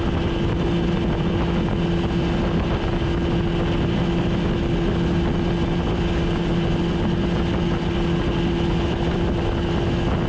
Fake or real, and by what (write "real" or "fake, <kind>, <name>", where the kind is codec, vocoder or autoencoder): real